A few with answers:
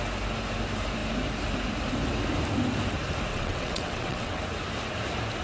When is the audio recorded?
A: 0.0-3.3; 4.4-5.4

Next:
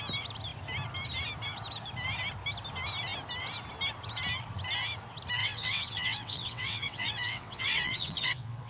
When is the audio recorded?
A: 0.0-5.4

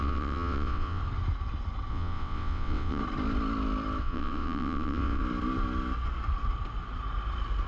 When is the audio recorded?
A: 1.0-1.9; 3.0-4.0; 5.2-7.7

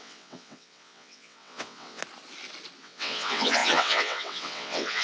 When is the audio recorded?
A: 2.0-2.8

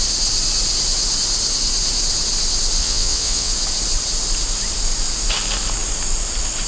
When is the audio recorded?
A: 0.0-2.8; 3.5-6.7